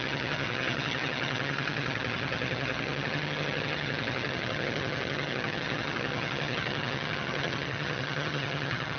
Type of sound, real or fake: fake